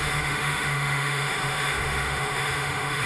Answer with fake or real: fake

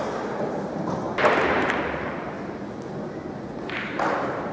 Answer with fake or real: real